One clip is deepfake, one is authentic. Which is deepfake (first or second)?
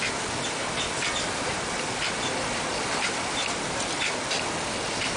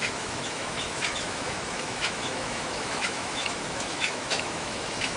second